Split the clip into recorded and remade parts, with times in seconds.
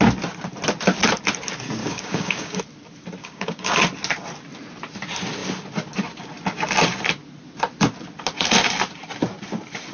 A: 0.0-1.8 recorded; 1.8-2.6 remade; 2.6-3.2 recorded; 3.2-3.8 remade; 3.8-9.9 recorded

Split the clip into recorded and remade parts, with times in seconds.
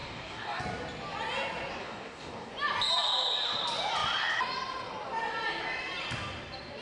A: 0.0-0.6 remade; 0.6-1.8 recorded; 1.8-2.5 remade; 2.5-6.8 recorded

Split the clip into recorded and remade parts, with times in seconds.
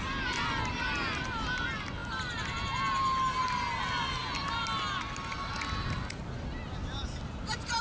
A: 0.0-7.8 recorded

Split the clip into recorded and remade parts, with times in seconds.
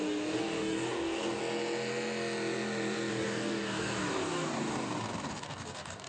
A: 0.0-1.4 remade; 1.4-3.1 recorded; 3.1-6.1 remade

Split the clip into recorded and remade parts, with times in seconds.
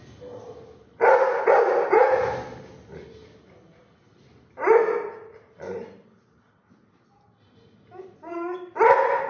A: 0.0-9.3 recorded